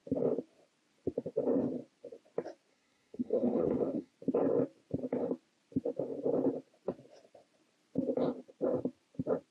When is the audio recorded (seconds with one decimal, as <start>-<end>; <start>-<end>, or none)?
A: 0.0-2.7; 4.1-9.5